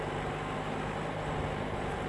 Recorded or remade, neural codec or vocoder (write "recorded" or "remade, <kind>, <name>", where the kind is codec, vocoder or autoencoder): recorded